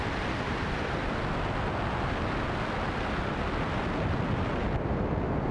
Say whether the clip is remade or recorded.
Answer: recorded